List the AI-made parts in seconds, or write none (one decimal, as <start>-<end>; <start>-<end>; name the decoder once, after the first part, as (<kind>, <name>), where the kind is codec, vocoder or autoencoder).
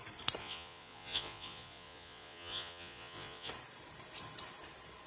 0.4-3.5 (vocoder, Vocos)